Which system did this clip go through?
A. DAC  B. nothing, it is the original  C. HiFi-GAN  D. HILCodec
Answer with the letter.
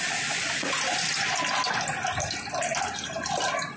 B